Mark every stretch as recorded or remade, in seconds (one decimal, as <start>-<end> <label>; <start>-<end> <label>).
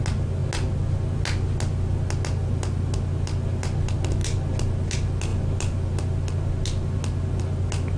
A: 0.0-8.0 recorded